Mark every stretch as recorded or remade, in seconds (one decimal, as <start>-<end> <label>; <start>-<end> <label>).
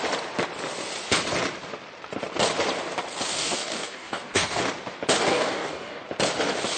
0.0-3.3 recorded; 3.3-4.6 remade; 4.6-5.3 recorded; 5.3-6.0 remade; 6.0-6.8 recorded